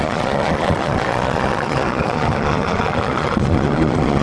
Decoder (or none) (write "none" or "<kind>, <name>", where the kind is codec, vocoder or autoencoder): vocoder, Vocos